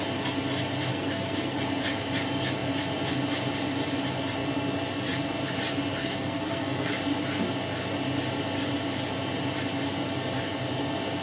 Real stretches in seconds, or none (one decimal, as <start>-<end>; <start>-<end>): 0.0-0.9; 1.6-6.0; 6.9-11.2